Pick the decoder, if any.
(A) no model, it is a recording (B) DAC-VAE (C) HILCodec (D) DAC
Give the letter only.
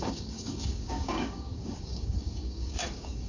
D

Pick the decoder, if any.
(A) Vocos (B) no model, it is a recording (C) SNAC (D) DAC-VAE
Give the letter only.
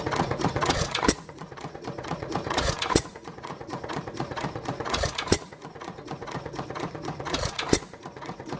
A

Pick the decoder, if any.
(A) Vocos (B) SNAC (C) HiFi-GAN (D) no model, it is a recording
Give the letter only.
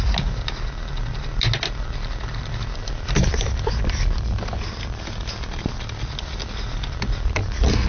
D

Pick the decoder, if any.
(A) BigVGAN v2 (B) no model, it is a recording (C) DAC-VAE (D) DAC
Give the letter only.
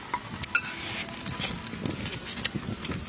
B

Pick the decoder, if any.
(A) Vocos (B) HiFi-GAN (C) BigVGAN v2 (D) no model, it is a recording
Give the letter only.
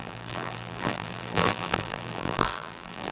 C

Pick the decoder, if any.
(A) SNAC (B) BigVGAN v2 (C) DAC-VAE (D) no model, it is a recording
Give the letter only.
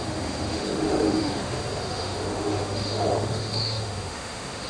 C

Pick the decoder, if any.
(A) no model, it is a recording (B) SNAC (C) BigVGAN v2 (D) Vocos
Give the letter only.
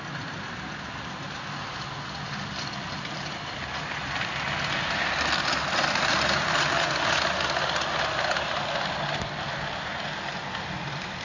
A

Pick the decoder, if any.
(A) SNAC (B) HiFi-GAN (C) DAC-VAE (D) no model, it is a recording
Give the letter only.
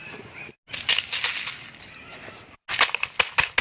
D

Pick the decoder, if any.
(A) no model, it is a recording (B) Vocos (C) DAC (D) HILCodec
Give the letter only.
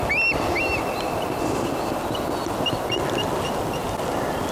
A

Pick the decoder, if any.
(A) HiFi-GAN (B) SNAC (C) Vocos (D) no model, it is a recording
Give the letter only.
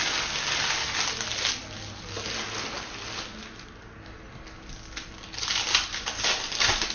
D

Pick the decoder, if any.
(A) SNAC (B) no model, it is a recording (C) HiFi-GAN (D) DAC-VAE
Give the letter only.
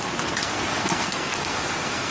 A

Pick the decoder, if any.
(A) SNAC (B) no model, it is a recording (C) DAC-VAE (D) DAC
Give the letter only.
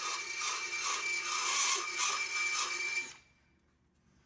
B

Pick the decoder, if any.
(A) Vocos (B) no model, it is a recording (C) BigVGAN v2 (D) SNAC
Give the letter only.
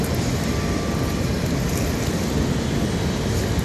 B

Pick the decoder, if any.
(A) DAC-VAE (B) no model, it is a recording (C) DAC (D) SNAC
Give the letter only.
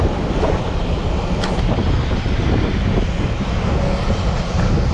B